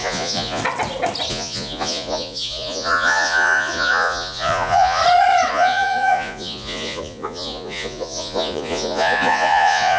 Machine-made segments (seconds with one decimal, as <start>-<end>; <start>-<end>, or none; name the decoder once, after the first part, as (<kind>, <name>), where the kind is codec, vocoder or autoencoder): 0.0-0.6 (vocoder, Vocos); 1.3-5.0; 5.5-10.0